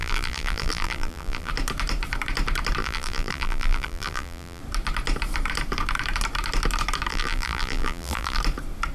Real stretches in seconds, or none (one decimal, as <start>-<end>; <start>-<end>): 1.5-2.8; 4.6-7.1; 8.4-8.9